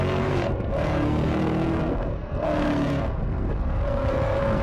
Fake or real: fake